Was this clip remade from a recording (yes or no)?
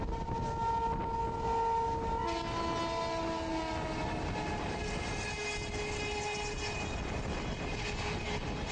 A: no